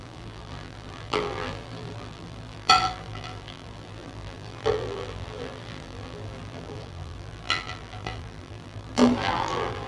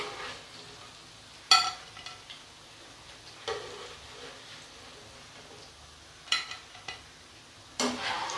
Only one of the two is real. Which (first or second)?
second